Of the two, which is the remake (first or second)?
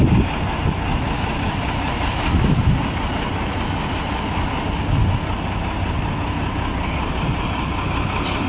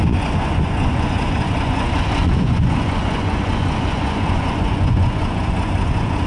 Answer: second